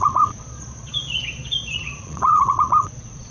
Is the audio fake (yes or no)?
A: yes